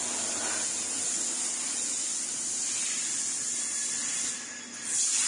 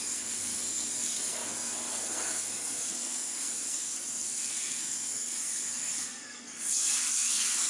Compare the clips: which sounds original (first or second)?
first